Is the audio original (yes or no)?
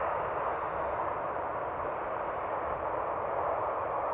yes